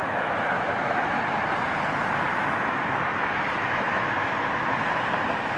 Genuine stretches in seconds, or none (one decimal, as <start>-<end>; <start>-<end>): 1.2-2.3; 4.9-5.6